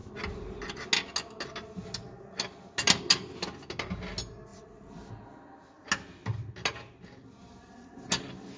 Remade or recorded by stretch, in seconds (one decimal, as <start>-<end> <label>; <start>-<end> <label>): 0.0-4.5 recorded; 4.5-5.1 remade; 5.1-8.6 recorded